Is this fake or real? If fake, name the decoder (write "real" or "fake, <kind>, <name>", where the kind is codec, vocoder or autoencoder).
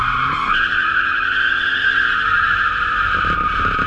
real